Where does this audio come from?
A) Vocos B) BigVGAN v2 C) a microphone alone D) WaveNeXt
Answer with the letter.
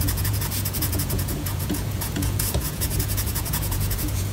A